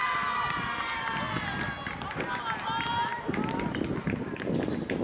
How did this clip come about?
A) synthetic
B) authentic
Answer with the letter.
B